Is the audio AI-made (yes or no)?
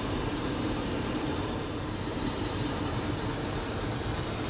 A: yes